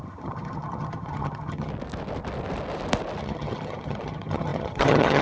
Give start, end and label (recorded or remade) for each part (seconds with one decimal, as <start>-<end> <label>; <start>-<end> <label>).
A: 0.0-1.7 remade; 1.7-3.2 recorded; 3.2-5.2 remade